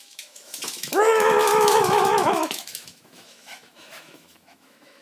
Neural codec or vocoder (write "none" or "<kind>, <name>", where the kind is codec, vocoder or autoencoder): autoencoder, DAC-VAE